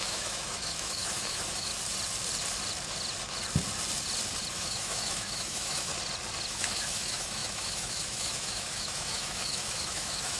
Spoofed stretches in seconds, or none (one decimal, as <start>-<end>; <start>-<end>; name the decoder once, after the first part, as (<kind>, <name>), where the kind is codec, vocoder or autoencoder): 0.0-1.7 (autoencoder, DAC-VAE); 4.5-5.9; 6.5-10.4